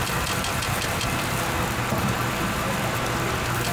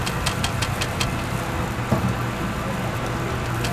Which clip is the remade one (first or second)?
first